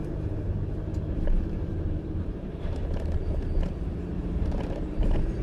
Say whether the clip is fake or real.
fake